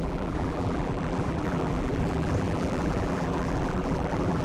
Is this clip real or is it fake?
fake